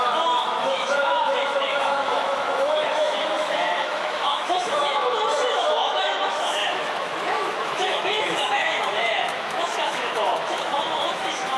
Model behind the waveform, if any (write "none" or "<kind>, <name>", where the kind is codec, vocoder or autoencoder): autoencoder, DAC-VAE